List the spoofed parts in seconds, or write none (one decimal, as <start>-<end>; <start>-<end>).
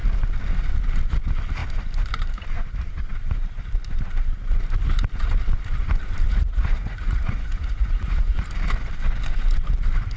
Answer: 6.3-8.4